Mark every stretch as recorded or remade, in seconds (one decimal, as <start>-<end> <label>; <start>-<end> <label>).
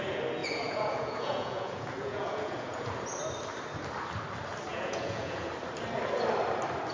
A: 0.0-0.4 recorded; 0.4-2.9 remade; 2.9-4.7 recorded; 4.7-5.5 remade; 5.5-6.9 recorded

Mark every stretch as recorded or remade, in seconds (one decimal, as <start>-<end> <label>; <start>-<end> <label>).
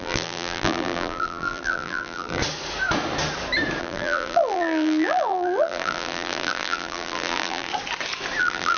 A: 0.0-2.4 remade; 2.4-3.8 recorded; 3.8-7.7 remade; 7.7-8.4 recorded; 8.4-8.8 remade